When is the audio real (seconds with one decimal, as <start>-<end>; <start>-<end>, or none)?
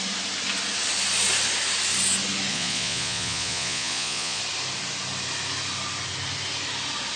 0.0-2.5; 4.4-7.2